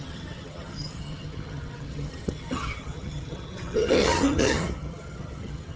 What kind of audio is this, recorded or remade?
remade